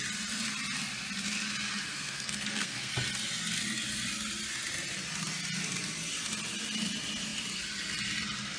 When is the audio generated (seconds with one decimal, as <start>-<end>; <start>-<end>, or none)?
1.9-2.9